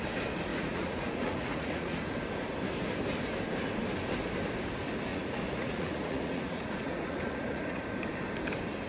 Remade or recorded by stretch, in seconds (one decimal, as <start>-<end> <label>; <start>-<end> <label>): 0.0-0.5 recorded; 0.5-2.0 remade; 2.0-5.1 recorded; 5.1-7.8 remade; 7.8-8.9 recorded